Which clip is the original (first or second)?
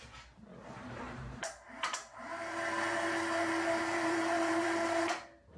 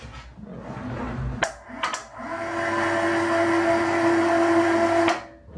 second